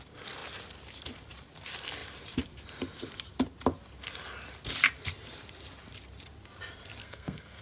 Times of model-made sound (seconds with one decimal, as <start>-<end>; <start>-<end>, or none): 7.0-7.6